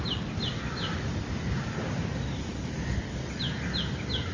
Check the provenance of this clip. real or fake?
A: real